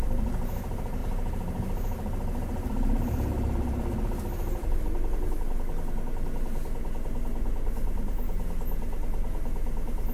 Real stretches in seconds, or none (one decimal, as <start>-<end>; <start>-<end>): 0.0-10.1